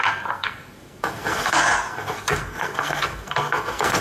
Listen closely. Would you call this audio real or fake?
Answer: fake